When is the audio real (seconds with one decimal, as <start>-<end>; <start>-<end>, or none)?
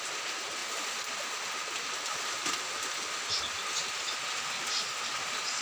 0.0-5.6